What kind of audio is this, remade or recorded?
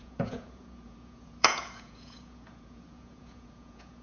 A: remade